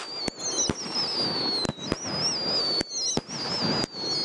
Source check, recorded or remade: recorded